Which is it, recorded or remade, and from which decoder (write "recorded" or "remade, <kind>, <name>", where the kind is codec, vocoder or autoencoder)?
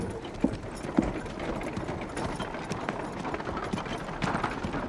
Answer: recorded